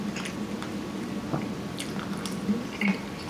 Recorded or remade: recorded